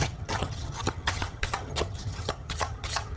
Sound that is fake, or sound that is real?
fake